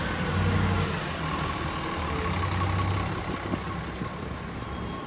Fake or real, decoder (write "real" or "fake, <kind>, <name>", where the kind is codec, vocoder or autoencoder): real